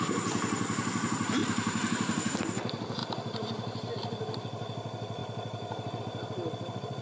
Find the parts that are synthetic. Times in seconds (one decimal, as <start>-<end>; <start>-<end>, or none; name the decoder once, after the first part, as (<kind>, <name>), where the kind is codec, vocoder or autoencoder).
1.4-2.4 (vocoder, BigVGAN v2); 3.0-3.9; 5.2-6.0